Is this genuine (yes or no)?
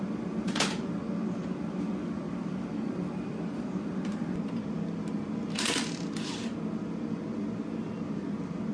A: yes